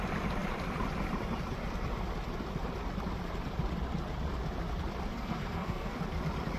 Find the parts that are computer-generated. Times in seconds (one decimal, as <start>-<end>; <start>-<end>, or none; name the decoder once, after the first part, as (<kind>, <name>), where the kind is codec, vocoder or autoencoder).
5.1-6.0 (codec, SNAC)